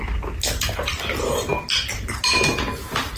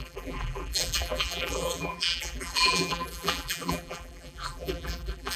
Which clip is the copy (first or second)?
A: second